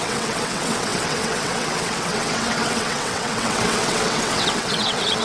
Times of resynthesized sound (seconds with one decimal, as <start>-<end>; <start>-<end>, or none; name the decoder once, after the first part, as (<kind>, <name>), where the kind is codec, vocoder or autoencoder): 0.0-5.2 (vocoder, WaveNeXt)